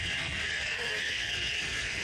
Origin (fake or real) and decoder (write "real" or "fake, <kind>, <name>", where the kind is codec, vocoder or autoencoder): fake, codec, SNAC